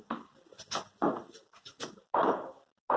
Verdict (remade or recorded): recorded